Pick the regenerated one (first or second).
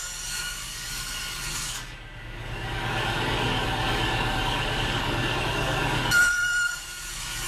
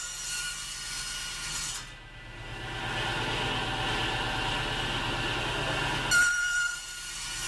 first